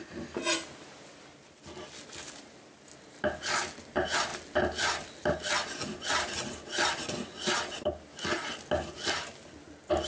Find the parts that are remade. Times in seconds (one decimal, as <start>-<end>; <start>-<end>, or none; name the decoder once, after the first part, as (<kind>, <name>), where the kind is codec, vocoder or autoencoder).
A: none